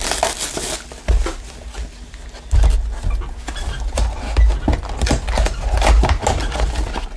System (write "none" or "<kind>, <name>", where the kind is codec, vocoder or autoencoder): none